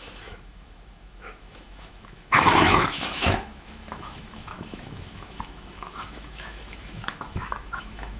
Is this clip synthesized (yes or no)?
yes